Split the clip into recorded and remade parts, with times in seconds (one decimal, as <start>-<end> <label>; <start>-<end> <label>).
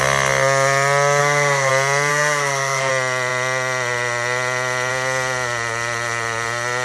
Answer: 0.0-1.2 recorded; 1.2-1.7 remade; 1.7-2.1 recorded; 2.1-2.9 remade; 2.9-6.8 recorded